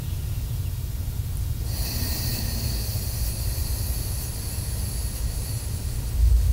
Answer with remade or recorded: recorded